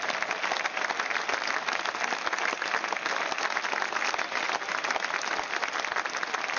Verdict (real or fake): real